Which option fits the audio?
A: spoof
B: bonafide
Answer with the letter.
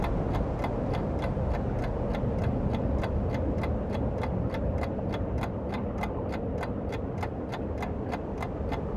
B